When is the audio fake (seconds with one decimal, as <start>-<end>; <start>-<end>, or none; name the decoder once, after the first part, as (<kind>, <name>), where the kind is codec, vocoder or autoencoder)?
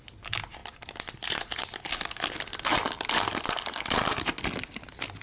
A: none